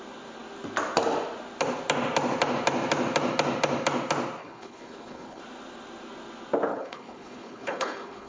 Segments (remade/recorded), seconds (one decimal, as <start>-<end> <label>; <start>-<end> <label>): 0.0-4.4 recorded; 4.4-5.4 remade; 5.4-6.7 recorded; 6.7-8.3 remade